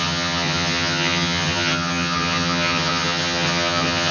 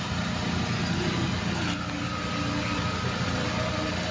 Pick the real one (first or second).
second